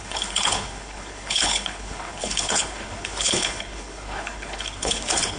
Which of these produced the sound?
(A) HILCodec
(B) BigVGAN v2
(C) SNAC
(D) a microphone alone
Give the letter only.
A